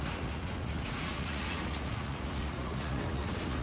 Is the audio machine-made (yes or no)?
yes